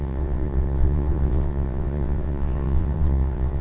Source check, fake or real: fake